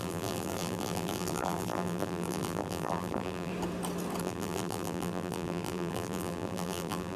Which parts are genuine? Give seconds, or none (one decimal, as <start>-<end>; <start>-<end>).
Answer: 3.5-4.2